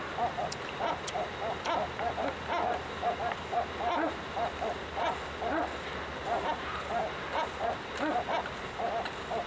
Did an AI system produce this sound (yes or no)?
no